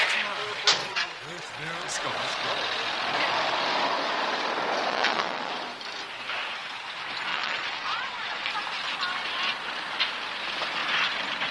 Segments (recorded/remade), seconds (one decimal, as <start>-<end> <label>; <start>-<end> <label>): 0.0-0.8 recorded; 0.8-1.5 remade; 1.5-4.9 recorded; 4.9-5.5 remade; 5.5-7.3 recorded; 7.3-8.5 remade; 8.5-11.5 recorded